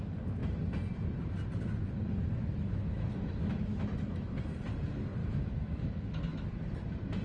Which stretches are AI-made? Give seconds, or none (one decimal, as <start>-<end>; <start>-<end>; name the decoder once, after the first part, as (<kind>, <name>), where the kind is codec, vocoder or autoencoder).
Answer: 2.4-4.4 (autoencoder, DAC-VAE); 5.2-6.5